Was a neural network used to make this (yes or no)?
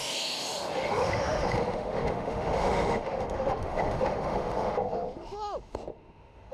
yes